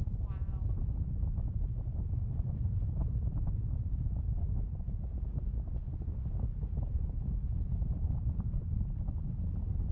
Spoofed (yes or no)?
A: no